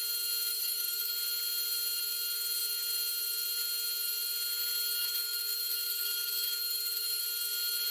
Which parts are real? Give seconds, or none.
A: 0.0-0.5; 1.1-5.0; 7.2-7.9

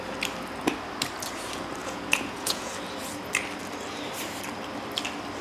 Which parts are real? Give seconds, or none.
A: 0.0-1.8; 2.7-5.4

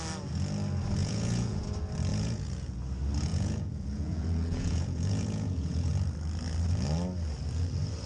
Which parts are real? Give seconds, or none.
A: 0.0-1.0; 1.6-2.1; 2.8-3.3; 5.9-8.1

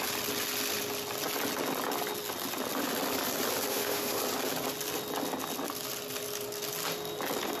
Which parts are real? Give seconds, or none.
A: 0.0-3.7; 4.2-7.6